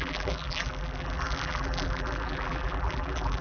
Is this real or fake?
fake